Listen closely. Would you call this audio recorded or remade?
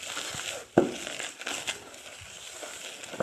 recorded